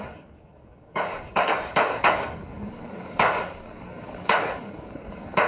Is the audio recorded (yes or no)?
no